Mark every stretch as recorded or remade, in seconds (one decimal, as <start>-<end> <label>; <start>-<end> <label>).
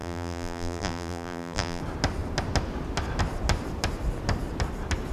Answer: 0.0-1.8 remade; 1.8-5.1 recorded